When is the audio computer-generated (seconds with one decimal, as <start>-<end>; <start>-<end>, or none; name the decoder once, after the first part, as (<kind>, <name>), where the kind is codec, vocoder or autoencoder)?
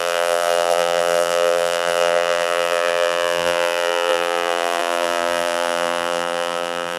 0.0-7.0 (vocoder, BigVGAN v2)